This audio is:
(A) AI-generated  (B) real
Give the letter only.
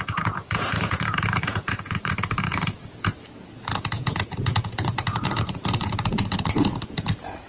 A